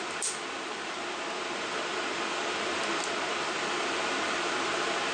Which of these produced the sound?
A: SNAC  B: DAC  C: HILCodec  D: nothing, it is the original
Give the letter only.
D